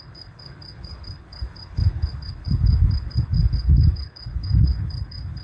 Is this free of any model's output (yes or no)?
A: no